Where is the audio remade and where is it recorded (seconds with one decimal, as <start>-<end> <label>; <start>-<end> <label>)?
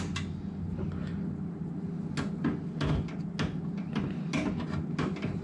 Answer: 0.0-5.4 recorded